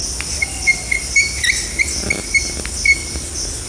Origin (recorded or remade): recorded